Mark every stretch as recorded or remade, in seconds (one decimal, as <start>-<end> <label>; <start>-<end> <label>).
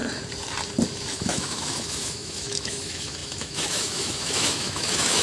0.0-1.1 recorded; 1.1-5.2 remade